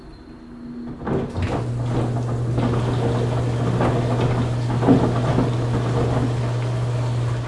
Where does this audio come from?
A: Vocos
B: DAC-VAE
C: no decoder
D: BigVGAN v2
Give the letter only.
C